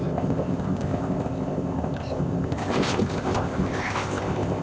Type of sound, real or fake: fake